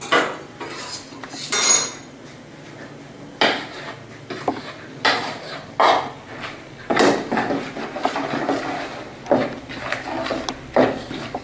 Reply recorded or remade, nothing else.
recorded